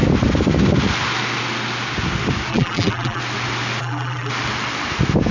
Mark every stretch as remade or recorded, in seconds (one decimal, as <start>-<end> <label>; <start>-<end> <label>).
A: 0.0-2.5 recorded; 2.5-3.2 remade; 3.2-3.8 recorded; 3.8-4.3 remade; 4.3-5.3 recorded